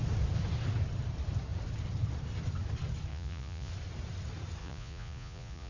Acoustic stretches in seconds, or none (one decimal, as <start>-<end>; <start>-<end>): 0.0-3.1; 3.7-4.6